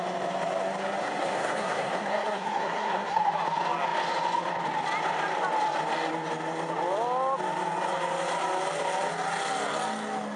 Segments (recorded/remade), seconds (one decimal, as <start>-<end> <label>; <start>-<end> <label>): 0.0-1.0 recorded; 1.0-3.2 remade; 3.2-10.4 recorded